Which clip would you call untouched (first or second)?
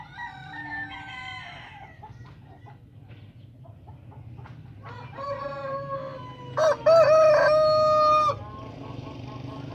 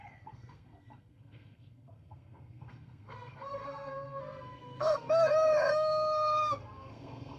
first